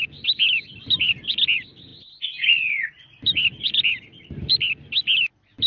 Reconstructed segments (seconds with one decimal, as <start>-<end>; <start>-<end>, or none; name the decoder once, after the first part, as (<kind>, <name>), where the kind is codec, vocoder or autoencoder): none